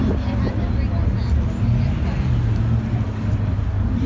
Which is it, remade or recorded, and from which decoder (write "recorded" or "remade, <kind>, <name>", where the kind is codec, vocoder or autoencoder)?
recorded